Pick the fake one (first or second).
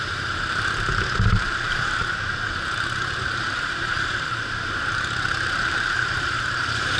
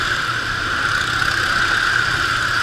first